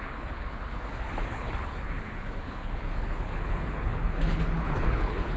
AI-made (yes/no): yes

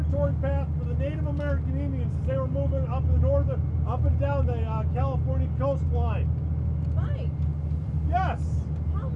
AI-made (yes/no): no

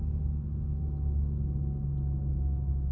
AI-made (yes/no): no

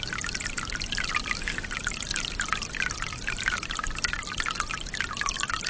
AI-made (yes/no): no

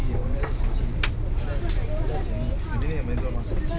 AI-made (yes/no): no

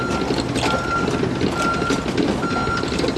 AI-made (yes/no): no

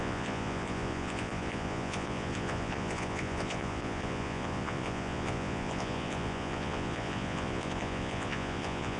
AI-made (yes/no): yes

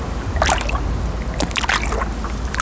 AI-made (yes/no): no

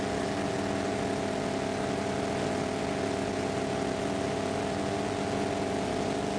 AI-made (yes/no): no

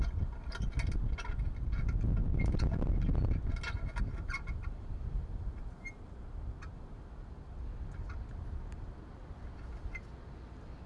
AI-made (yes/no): no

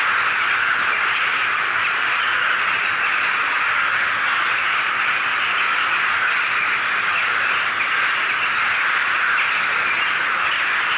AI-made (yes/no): no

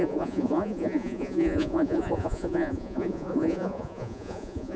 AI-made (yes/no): yes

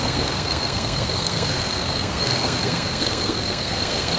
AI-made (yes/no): yes